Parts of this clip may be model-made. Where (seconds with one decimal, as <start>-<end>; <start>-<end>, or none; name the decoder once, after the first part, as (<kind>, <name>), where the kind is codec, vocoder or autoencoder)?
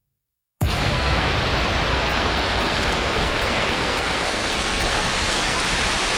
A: 0.0-1.3 (codec, SNAC); 1.9-5.6